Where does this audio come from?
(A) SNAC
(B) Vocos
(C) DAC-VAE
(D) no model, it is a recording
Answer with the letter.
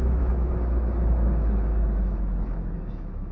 C